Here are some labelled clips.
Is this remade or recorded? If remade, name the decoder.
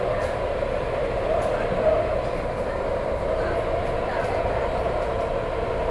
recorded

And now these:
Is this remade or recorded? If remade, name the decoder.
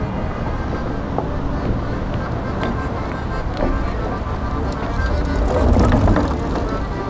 recorded